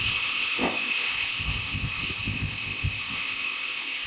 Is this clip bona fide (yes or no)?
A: no